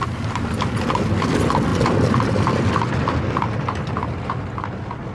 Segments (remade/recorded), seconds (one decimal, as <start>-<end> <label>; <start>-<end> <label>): 0.0-5.1 recorded